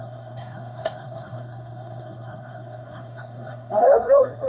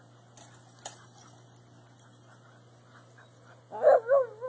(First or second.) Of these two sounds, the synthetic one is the first